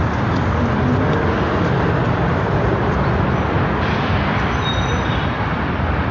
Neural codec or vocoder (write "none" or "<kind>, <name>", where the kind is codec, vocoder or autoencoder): none